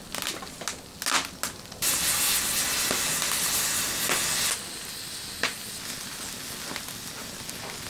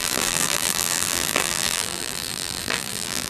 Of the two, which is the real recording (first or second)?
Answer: first